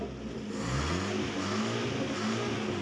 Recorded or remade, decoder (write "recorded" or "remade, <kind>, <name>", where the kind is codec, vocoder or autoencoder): recorded